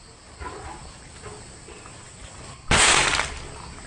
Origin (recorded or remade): recorded